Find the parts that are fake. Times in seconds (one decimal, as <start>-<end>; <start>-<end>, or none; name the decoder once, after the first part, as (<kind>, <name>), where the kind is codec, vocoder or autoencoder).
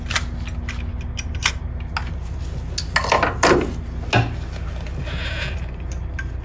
none